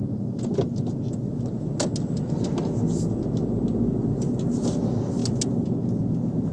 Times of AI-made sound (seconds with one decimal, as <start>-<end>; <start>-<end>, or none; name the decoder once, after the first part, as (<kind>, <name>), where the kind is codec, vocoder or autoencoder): none